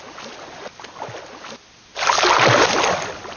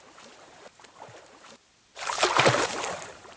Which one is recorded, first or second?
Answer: first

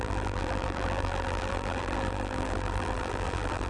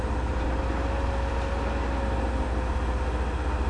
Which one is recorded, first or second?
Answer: second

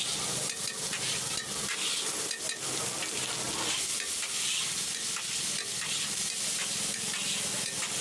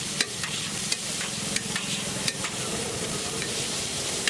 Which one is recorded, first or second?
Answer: first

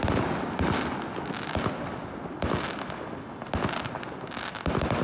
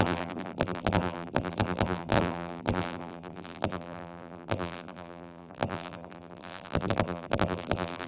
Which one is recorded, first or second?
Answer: first